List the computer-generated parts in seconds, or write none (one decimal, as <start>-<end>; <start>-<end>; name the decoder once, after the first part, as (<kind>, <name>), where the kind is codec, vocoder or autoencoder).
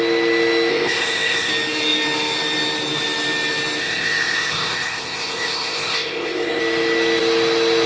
0.7-1.5 (codec, ZipCodec); 3.8-6.6